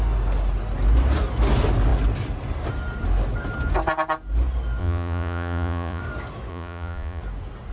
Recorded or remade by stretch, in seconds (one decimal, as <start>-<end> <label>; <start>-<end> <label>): 0.0-4.8 recorded; 4.8-6.0 remade; 6.0-6.5 recorded; 6.5-7.2 remade; 7.2-7.7 recorded